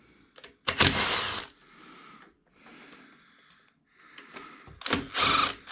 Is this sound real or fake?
real